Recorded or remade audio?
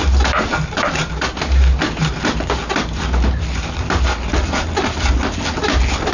recorded